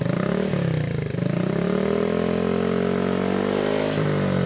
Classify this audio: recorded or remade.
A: recorded